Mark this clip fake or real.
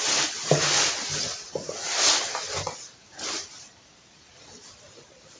real